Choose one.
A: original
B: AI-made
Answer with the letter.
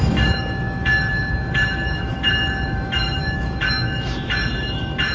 B